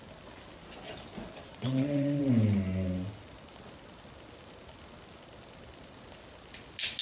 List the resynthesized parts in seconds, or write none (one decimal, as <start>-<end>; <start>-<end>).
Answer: 1.5-2.2